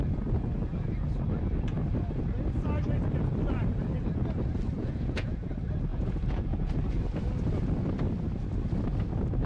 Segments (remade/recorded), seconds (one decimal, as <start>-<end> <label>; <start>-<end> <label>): 0.0-4.8 recorded; 4.8-5.5 remade; 5.5-5.9 recorded; 5.9-6.7 remade; 6.7-9.5 recorded